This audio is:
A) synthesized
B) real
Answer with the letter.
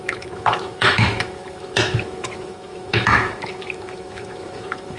A